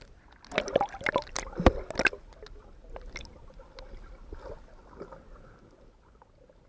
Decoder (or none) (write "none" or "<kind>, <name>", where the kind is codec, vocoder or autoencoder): none